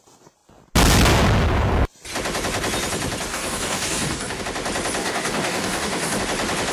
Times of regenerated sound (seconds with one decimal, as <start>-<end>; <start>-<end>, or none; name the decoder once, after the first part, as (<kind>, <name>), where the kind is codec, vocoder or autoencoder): 3.3-4.4 (codec, DAC); 5.0-6.2